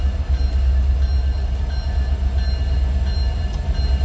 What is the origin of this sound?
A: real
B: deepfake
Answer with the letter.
A